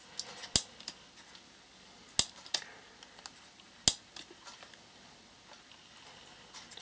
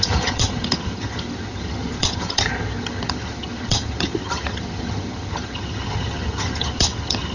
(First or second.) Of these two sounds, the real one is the first